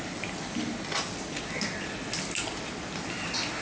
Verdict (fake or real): real